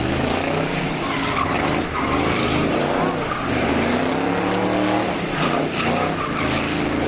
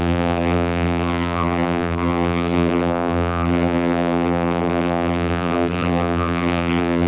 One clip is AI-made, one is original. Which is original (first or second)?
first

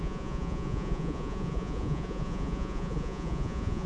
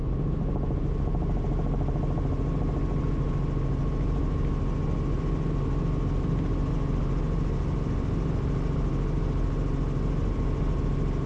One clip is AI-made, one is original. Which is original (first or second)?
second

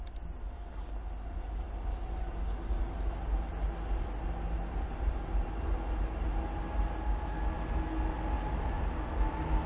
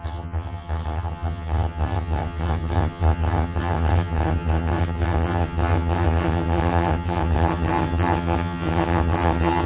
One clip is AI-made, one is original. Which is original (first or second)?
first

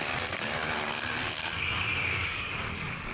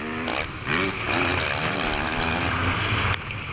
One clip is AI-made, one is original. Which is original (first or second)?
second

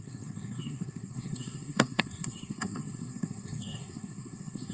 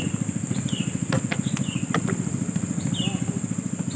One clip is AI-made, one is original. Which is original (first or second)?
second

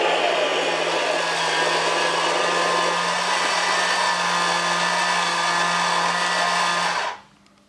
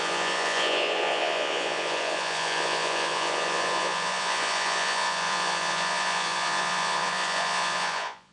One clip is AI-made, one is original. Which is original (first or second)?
first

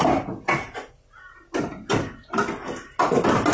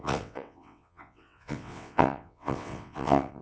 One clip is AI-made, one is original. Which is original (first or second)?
first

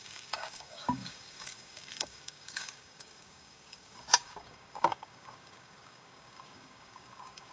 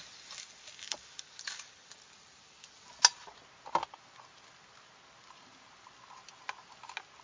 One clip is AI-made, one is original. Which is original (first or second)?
second